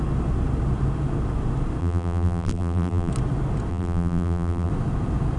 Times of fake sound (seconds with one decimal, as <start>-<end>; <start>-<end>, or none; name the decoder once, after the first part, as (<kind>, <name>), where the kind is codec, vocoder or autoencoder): 1.8-3.1 (vocoder, BigVGAN v2); 3.7-4.7